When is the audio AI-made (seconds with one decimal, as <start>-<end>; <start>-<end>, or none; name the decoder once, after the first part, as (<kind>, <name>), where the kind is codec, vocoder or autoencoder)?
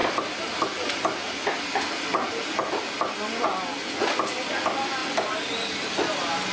none